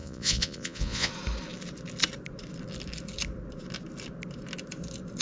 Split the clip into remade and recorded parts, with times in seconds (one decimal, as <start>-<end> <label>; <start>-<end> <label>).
0.0-1.1 remade; 1.1-5.2 recorded